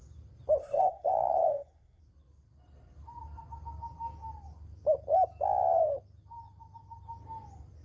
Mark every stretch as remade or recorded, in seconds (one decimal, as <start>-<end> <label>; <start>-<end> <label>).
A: 0.0-0.6 recorded; 0.6-2.0 remade; 2.0-7.8 recorded